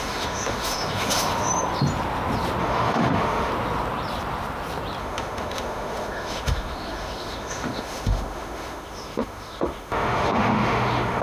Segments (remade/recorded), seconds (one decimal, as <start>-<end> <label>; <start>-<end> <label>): 0.0-1.5 remade; 1.5-2.6 recorded; 2.6-3.5 remade; 3.5-5.0 recorded; 5.0-11.2 remade